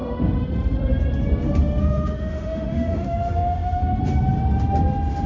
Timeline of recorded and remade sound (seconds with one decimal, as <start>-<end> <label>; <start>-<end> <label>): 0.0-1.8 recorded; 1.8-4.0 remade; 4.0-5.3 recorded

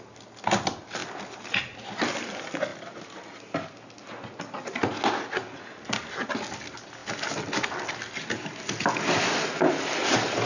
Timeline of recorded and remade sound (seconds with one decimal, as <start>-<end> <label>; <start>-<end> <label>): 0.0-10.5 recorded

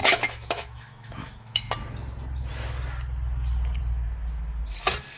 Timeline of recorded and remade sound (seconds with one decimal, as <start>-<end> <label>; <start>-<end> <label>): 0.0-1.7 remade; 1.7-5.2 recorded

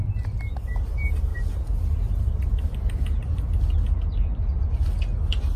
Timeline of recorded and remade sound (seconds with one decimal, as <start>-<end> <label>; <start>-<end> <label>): 0.0-5.6 recorded

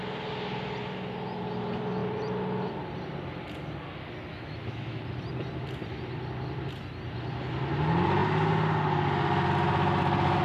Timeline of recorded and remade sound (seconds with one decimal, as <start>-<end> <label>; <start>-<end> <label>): 0.0-4.3 recorded; 4.3-5.0 remade; 5.0-10.4 recorded